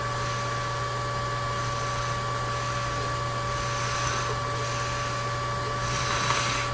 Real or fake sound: real